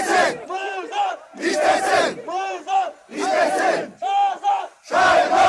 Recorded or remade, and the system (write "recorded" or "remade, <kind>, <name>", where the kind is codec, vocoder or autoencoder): remade, vocoder, BigVGAN v2